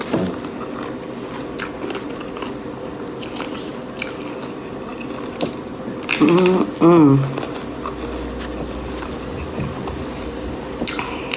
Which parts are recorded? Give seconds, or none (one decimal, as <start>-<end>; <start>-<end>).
0.0-11.4